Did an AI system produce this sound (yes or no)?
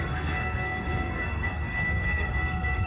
yes